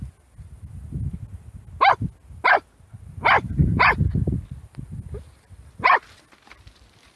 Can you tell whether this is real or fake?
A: real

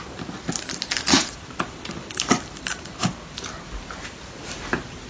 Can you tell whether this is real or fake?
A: real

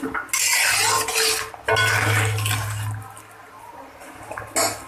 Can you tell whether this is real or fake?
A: real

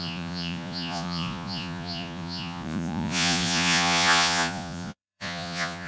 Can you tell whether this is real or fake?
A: fake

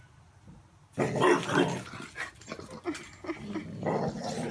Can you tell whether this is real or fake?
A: real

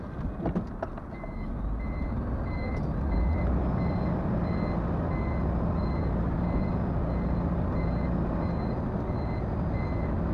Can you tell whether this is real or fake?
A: real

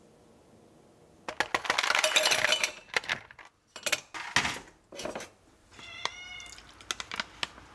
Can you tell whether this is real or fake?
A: real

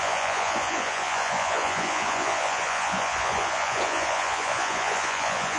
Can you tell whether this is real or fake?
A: fake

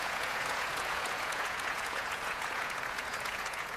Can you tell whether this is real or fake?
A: fake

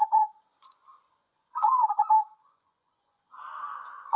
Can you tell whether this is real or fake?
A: fake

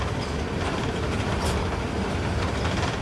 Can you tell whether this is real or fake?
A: real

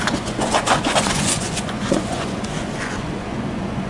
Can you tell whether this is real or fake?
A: fake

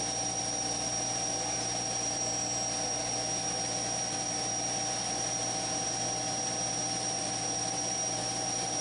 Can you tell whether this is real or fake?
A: real